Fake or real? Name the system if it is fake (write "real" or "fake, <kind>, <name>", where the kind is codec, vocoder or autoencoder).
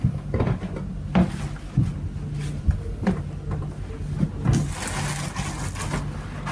real